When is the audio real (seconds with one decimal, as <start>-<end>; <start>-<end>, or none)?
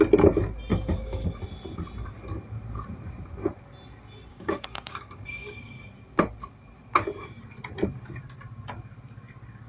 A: 0.0-0.7; 1.4-4.3; 5.7-9.7